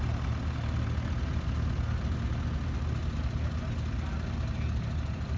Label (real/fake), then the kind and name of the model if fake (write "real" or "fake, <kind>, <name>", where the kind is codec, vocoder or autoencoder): real